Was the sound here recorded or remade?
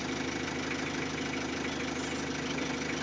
recorded